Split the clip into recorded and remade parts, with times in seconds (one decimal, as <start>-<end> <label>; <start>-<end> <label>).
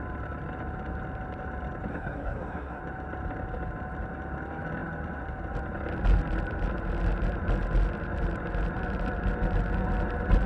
0.0-1.9 recorded; 1.9-2.8 remade; 2.8-10.5 recorded